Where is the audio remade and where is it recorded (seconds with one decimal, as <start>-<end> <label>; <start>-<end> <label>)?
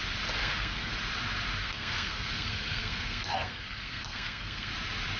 0.0-0.4 recorded; 0.4-0.9 remade; 0.9-1.6 recorded; 1.6-4.7 remade; 4.7-5.2 recorded